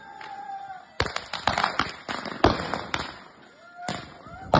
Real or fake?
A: fake